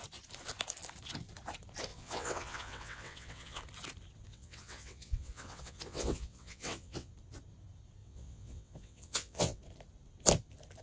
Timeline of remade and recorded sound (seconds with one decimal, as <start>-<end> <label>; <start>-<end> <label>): 0.0-1.9 recorded; 1.9-3.6 remade; 3.6-4.3 recorded; 4.3-7.1 remade; 7.1-8.0 recorded; 8.0-9.6 remade; 9.6-10.8 recorded